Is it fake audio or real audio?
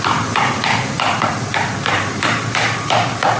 real